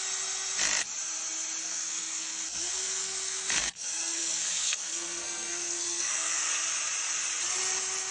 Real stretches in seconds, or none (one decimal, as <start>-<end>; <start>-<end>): 0.0-1.6; 6.5-8.1